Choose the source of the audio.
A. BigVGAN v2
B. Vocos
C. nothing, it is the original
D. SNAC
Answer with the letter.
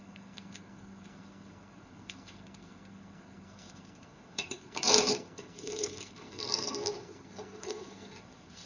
D